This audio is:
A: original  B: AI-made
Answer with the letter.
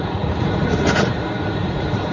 B